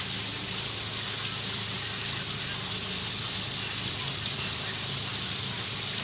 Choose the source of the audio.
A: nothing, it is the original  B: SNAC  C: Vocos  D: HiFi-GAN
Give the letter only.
A